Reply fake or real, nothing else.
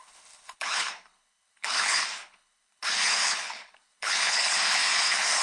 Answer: fake